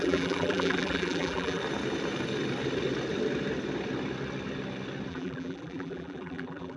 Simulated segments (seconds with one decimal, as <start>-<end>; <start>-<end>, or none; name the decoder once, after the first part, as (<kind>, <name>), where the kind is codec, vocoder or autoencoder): 0.0-1.6 (vocoder, BigVGAN v2); 5.1-6.8